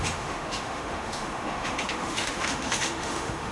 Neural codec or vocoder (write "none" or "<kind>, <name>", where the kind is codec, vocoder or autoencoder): autoencoder, DAC-VAE